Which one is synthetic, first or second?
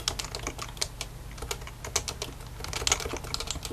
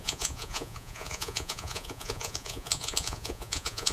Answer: second